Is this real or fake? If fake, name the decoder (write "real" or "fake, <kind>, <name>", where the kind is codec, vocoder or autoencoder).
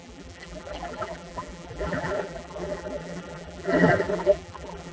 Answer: fake, vocoder, BigVGAN v2